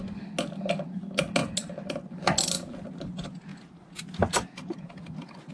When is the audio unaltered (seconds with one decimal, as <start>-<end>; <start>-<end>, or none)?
0.0-5.5